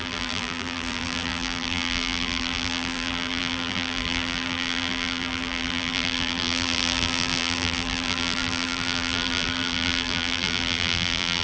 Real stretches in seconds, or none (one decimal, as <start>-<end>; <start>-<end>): none